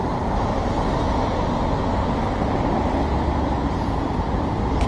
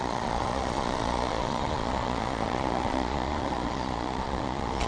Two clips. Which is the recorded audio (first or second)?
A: first